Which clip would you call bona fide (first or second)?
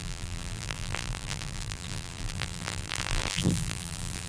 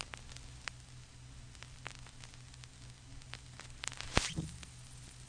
second